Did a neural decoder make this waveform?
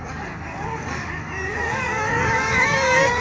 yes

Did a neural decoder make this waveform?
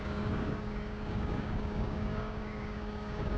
yes